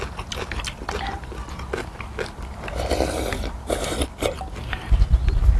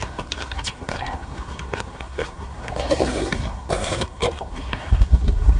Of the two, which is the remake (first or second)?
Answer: second